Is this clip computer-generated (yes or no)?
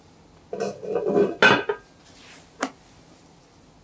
no